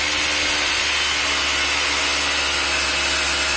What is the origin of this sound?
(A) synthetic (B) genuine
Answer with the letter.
B